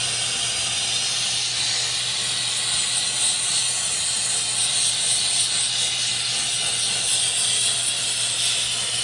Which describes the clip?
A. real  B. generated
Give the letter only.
A